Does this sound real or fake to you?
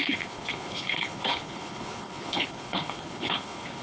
fake